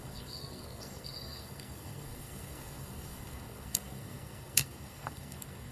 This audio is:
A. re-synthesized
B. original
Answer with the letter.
A